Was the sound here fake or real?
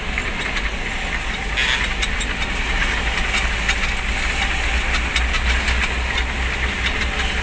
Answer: real